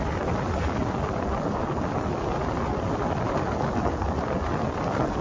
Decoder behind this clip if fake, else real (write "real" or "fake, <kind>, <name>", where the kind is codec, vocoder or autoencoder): real